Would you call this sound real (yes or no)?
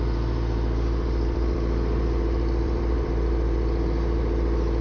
no